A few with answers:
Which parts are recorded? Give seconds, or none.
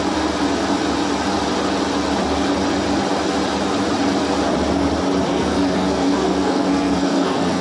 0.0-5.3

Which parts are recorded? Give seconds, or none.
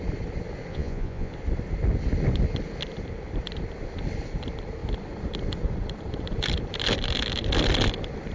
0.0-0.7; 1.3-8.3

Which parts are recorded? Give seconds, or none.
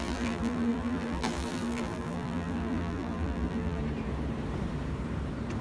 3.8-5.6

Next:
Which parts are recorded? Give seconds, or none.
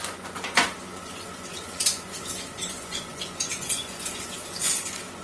none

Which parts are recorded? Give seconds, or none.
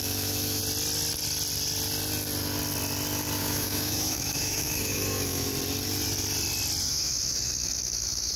0.6-3.4; 5.5-6.8